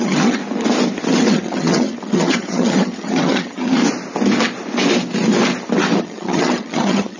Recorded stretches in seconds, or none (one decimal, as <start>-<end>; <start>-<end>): 0.4-1.1; 3.8-6.0